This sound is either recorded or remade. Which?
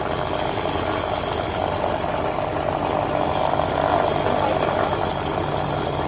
recorded